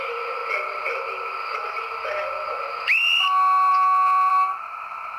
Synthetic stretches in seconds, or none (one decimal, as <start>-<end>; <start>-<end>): 3.7-4.3